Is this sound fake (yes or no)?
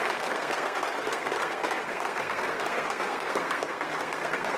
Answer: yes